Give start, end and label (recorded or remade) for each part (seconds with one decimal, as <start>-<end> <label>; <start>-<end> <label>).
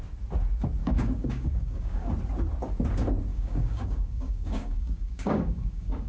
0.0-0.8 recorded; 0.8-2.1 remade; 2.1-3.3 recorded; 3.3-6.1 remade